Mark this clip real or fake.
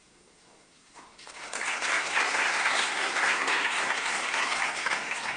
fake